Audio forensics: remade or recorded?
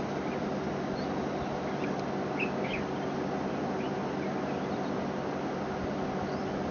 recorded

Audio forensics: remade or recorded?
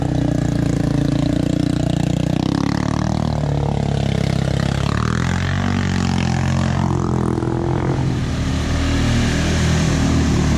recorded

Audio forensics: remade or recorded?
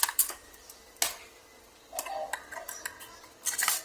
recorded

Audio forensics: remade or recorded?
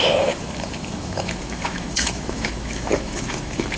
remade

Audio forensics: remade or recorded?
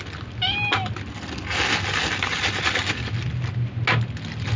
recorded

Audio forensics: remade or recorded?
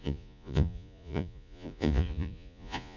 remade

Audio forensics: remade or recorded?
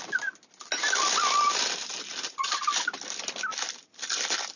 recorded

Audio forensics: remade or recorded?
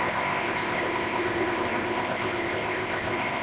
remade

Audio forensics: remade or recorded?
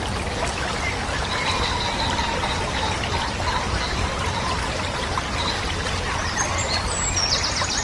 recorded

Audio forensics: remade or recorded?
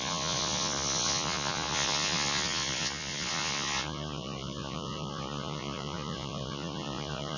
remade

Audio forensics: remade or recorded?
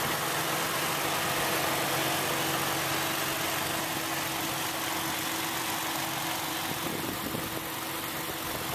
recorded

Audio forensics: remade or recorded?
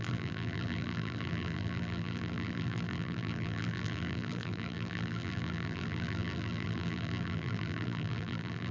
remade